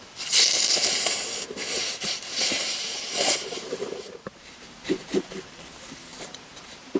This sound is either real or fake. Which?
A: fake